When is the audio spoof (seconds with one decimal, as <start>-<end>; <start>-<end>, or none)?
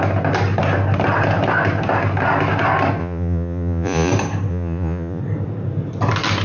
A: 3.0-4.1; 4.5-5.2